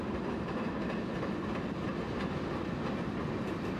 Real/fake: real